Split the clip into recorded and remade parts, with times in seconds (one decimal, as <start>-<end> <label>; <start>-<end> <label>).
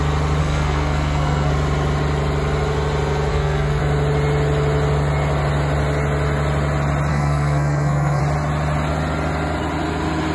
0.0-0.4 recorded; 0.4-1.5 remade; 1.5-3.3 recorded; 3.3-3.8 remade; 3.8-7.1 recorded; 7.1-8.2 remade; 8.2-10.3 recorded